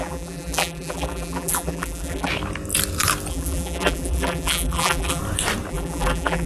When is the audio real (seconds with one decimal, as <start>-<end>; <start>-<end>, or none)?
2.3-3.3; 5.2-5.7